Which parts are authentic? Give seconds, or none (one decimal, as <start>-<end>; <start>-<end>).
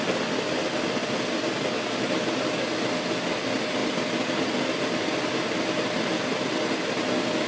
0.0-7.5